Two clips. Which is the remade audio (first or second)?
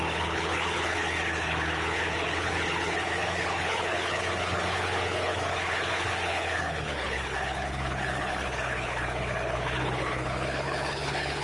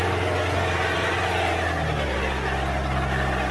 first